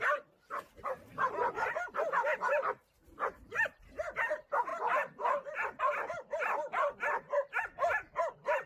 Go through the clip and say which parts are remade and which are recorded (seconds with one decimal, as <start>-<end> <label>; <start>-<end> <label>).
0.0-1.1 recorded; 1.1-4.0 remade; 4.0-8.7 recorded